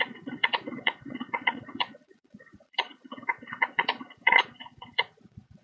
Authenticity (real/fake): fake